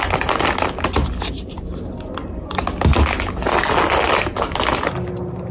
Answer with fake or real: real